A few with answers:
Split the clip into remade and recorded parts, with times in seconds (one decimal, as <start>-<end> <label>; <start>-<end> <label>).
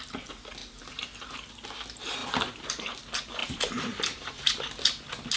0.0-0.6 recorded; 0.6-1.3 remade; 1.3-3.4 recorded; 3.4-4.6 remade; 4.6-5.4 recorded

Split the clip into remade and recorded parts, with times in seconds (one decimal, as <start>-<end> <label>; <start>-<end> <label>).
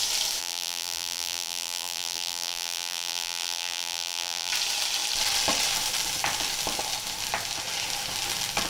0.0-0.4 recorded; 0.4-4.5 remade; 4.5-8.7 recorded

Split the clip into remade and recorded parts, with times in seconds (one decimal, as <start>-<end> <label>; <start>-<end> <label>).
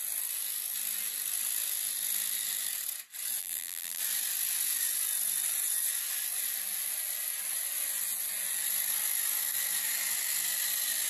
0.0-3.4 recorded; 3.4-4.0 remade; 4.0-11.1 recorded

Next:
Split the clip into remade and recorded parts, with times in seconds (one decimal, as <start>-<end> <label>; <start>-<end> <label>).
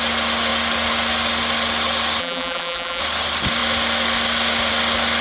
0.0-2.2 recorded; 2.2-3.0 remade; 3.0-5.2 recorded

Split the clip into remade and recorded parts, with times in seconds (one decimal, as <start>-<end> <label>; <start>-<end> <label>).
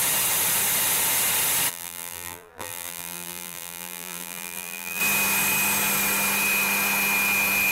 0.0-1.7 recorded; 1.7-5.0 remade; 5.0-7.7 recorded